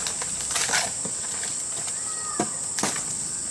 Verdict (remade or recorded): recorded